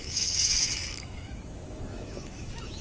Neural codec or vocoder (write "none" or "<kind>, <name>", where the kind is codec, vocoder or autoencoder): autoencoder, DAC-VAE